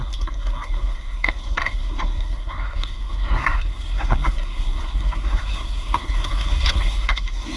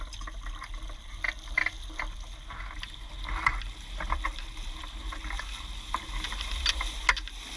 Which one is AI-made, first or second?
first